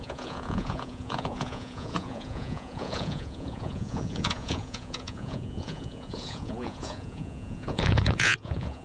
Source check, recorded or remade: remade